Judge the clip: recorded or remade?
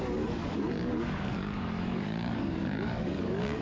remade